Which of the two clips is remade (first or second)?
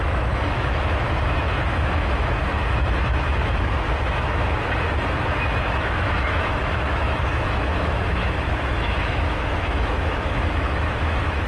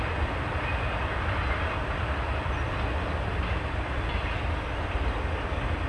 first